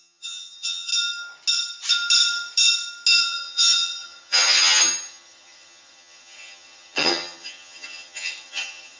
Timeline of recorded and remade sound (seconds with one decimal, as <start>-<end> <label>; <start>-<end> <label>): 0.0-0.9 remade; 0.9-3.2 recorded; 3.2-9.0 remade